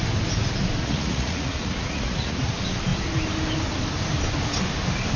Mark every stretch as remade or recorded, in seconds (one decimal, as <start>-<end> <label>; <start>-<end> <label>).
0.0-0.8 recorded; 0.8-2.5 remade; 2.5-5.2 recorded